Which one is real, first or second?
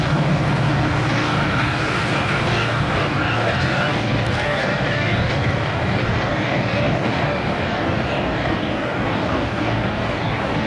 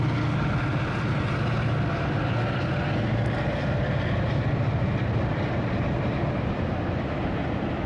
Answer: second